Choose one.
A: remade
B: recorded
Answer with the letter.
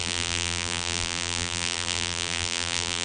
A